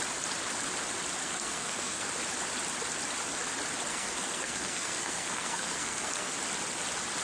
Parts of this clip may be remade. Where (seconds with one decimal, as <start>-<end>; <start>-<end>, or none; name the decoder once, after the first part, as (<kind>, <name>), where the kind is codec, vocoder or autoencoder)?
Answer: 1.2-2.1 (codec, SNAC); 3.9-6.3